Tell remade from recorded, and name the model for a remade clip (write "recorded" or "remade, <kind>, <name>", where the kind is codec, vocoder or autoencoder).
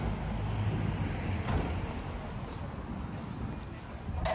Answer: recorded